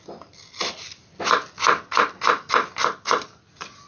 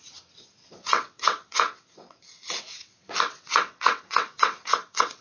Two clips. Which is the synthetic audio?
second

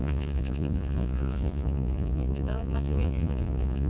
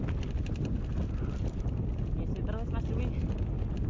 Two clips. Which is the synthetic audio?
first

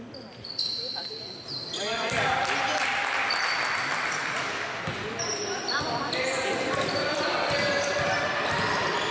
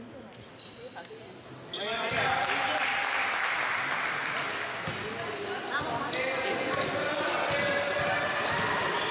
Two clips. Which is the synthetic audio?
first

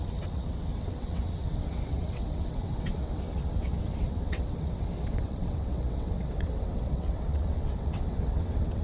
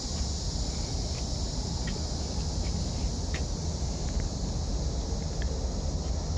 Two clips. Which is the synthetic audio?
first